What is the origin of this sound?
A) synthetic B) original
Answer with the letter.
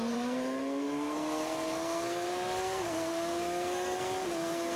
A